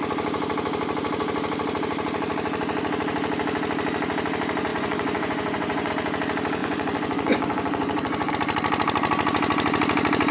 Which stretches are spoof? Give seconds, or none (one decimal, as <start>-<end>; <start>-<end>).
4.7-5.9; 6.6-8.3